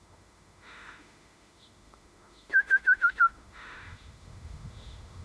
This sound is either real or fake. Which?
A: fake